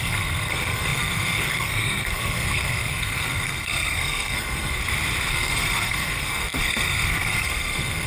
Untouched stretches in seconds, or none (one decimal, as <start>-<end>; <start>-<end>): 4.8-5.3